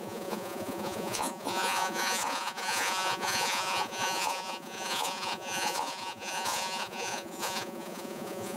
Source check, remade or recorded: remade